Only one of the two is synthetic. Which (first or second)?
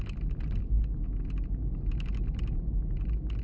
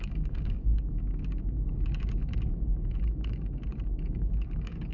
second